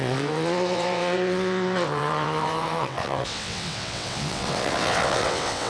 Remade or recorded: remade